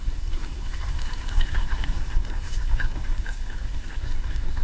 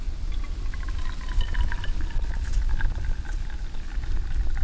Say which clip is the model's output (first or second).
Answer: first